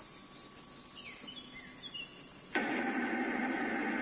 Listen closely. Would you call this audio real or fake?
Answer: real